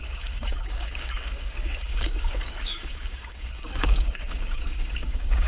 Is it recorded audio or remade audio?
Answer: remade